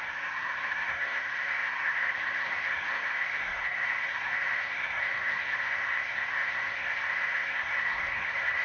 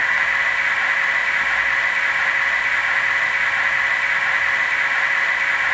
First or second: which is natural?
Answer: second